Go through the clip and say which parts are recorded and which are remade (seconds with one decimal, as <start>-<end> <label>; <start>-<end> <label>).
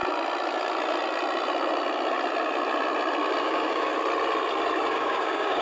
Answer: 0.0-3.4 recorded; 3.4-3.9 remade; 3.9-4.9 recorded; 4.9-5.6 remade